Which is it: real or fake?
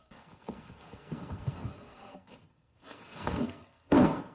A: fake